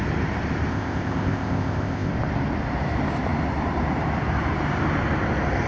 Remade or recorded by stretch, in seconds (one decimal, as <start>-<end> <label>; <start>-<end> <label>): 0.0-0.7 recorded; 0.7-2.1 remade; 2.1-5.7 recorded